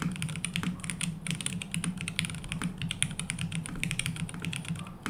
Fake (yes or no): no